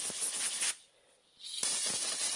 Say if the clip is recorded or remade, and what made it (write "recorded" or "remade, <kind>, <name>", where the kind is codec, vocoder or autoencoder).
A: recorded